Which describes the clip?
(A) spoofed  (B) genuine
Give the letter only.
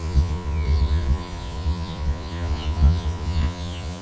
A